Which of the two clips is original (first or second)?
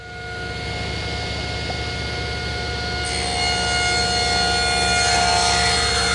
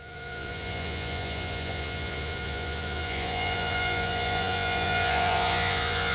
first